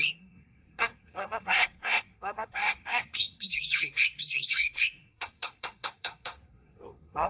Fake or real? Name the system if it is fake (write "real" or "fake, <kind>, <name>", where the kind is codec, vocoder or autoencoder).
fake, codec, SNAC